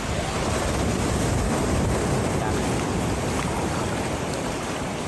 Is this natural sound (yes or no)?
yes